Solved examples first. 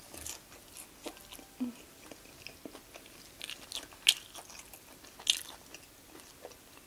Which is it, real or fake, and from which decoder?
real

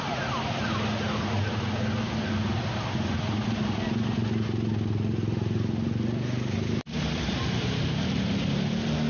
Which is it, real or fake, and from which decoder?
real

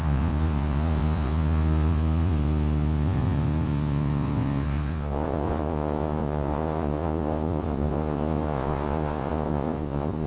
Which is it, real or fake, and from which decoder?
fake, vocoder, Vocos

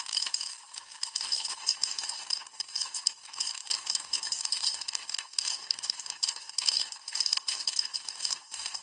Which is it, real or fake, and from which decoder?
fake, codec, DAC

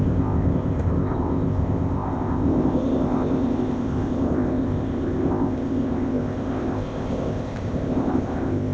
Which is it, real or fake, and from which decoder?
fake, codec, ZipCodec